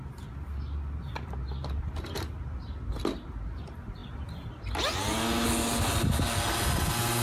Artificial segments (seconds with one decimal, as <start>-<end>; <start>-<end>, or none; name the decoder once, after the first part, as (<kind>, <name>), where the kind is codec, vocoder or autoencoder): none